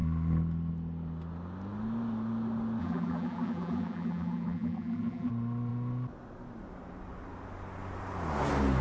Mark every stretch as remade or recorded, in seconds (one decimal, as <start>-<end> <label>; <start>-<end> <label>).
0.0-2.8 recorded; 2.8-5.3 remade; 5.3-8.8 recorded